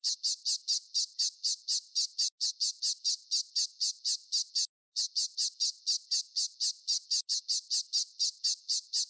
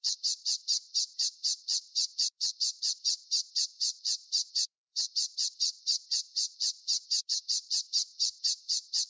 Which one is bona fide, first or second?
first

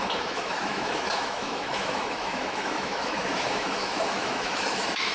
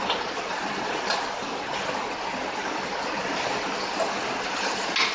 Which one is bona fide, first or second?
second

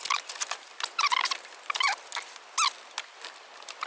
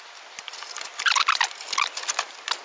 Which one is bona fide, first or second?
first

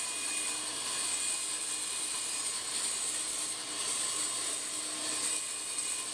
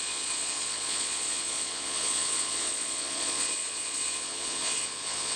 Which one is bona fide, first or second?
first